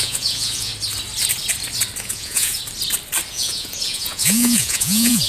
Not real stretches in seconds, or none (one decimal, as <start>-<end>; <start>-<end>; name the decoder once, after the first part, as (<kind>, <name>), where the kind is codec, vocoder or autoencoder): 0.0-0.7 (vocoder, Vocos); 2.0-2.6; 3.3-5.3

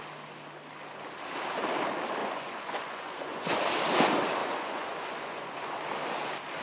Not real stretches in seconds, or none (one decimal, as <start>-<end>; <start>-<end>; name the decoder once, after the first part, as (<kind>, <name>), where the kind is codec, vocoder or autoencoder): 2.2-3.6 (vocoder, Vocos); 4.4-5.7